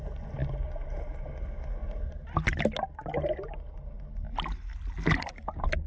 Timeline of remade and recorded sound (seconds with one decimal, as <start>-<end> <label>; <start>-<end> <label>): 0.0-5.9 recorded